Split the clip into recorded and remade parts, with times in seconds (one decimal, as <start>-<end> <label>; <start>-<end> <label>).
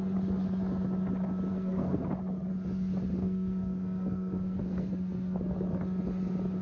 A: 0.0-1.5 recorded; 1.5-2.1 remade; 2.1-3.1 recorded; 3.1-4.9 remade; 4.9-6.6 recorded